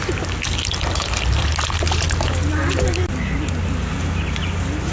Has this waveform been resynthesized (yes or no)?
no